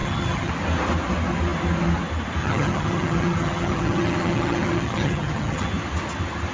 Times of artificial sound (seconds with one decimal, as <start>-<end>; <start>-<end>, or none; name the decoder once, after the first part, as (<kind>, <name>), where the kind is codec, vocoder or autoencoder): 0.0-0.5 (vocoder, HiFi-GAN); 2.4-5.7